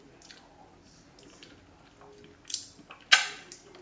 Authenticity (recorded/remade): recorded